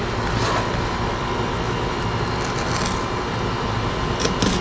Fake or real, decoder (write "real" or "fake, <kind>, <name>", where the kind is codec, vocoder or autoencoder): real